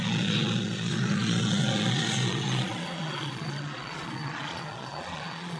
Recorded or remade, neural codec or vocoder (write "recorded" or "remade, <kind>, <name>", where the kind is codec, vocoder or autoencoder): remade, vocoder, Vocos